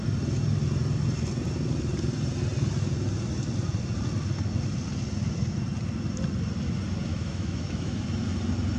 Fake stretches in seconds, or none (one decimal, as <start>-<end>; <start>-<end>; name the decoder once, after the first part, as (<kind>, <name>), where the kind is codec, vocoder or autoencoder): 7.1-8.0 (autoencoder, DAC-VAE)